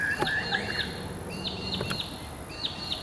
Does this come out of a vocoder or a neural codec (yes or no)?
no